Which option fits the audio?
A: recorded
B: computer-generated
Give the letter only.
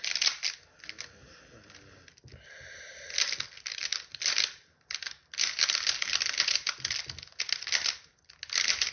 A